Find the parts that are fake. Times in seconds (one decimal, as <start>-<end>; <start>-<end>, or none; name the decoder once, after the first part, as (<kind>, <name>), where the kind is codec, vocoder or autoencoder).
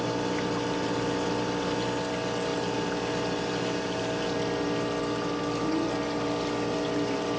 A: none